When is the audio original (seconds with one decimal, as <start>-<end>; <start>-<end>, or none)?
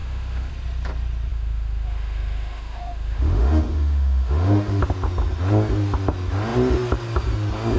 0.5-1.3; 4.8-7.8